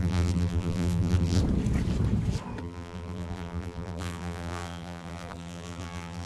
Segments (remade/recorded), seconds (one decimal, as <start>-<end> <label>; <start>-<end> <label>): 0.0-1.4 remade; 1.4-2.6 recorded; 2.6-6.3 remade